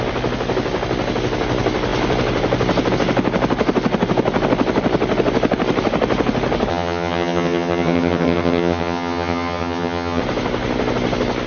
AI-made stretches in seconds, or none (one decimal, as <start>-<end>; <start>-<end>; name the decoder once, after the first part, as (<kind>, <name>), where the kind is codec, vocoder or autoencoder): 6.7-10.2 (vocoder, HiFi-GAN)